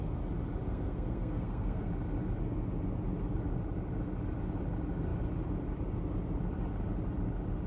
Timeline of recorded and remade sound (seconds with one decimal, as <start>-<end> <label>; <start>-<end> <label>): 0.0-0.6 recorded; 0.6-1.9 remade; 1.9-7.7 recorded